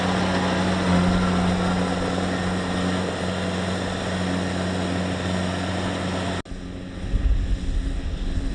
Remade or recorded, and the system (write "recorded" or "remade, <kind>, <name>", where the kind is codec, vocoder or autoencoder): recorded